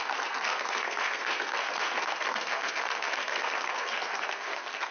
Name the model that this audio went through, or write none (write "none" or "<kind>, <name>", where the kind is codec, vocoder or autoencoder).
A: codec, SNAC